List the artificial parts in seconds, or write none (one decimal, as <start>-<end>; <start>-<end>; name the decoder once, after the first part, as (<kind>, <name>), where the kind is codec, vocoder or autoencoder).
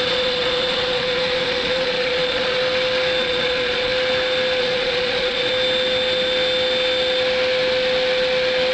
0.0-2.6 (vocoder, Vocos); 3.2-3.9; 4.6-5.5